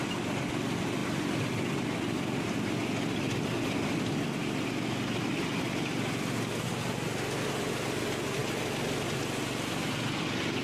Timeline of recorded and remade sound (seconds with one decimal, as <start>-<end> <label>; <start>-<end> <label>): 0.0-10.6 recorded